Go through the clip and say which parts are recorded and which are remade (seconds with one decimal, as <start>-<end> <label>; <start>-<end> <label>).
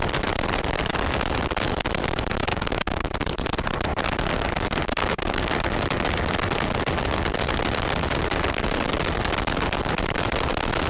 0.0-2.5 recorded; 2.5-3.1 remade; 3.1-5.0 recorded; 5.0-5.5 remade; 5.5-10.9 recorded